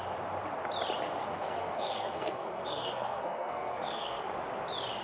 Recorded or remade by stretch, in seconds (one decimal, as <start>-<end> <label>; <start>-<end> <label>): 0.0-1.2 recorded; 1.2-4.2 remade; 4.2-5.0 recorded